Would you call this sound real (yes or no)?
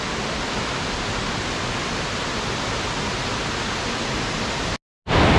yes